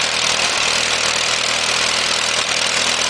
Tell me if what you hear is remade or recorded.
recorded